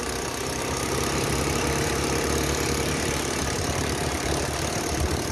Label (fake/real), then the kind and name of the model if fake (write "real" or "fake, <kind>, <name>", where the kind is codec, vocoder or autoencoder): fake, vocoder, BigVGAN v2